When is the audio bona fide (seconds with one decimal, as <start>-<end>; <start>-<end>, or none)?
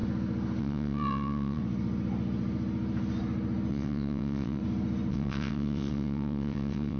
0.0-0.6; 1.6-3.7; 4.6-5.1